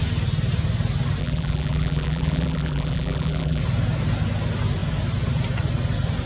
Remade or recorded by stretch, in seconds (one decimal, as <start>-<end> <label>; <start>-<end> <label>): 0.0-1.2 recorded; 1.2-3.6 remade; 3.6-6.3 recorded